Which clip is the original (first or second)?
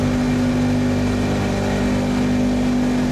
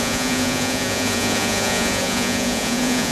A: first